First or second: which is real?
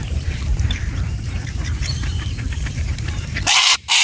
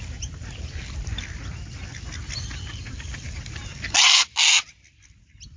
second